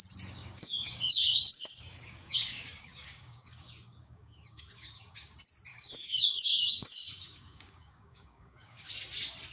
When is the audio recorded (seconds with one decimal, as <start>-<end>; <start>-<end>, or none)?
0.0-0.4; 5.3-5.7; 8.9-9.5